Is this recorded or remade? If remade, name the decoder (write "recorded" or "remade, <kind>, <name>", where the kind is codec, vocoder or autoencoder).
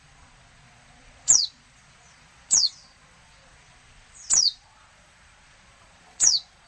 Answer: remade, vocoder, Vocos